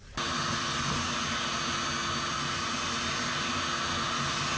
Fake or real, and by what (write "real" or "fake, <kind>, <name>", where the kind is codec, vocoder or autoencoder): real